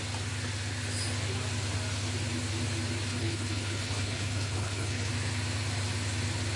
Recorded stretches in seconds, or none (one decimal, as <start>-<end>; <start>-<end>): 0.0-3.1; 5.1-6.6